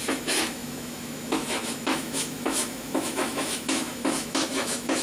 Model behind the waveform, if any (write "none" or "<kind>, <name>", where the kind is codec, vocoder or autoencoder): autoencoder, DAC-VAE